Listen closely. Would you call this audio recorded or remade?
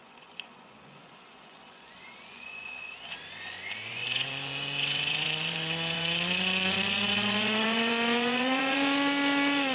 remade